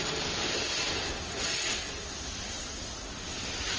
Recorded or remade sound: recorded